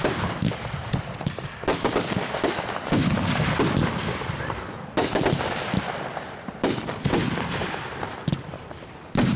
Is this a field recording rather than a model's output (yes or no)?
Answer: no